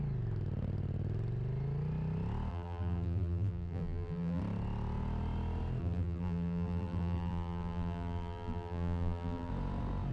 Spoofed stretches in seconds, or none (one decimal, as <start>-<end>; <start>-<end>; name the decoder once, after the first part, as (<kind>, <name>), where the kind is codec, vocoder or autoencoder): 2.5-4.4 (vocoder, BigVGAN v2); 5.8-9.5